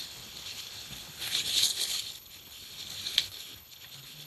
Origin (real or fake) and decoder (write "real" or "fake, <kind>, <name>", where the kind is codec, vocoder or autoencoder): fake, codec, HILCodec